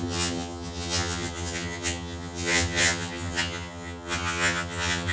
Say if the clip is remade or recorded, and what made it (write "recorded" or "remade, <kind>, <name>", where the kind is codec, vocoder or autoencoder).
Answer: remade, vocoder, HiFi-GAN